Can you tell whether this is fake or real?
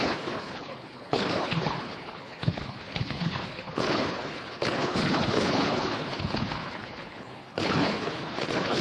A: fake